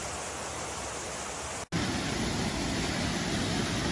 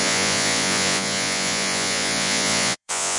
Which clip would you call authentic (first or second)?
first